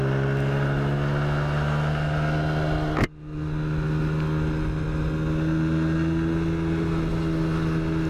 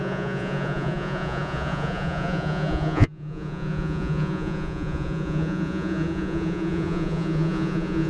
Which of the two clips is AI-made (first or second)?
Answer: second